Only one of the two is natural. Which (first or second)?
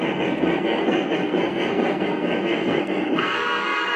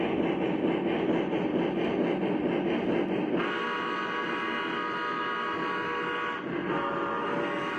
second